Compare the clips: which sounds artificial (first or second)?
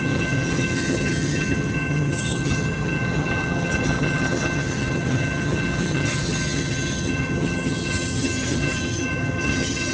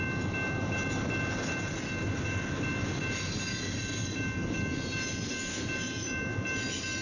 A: first